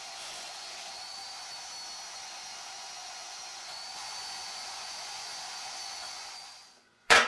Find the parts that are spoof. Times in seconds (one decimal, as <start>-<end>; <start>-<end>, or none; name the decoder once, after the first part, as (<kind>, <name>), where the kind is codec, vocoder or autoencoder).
0.0-1.2 (vocoder, Vocos); 2.1-7.3